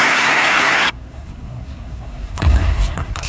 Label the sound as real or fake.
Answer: fake